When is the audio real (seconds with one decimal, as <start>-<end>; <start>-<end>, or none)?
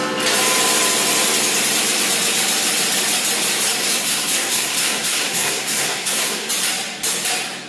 0.0-3.8; 6.5-7.7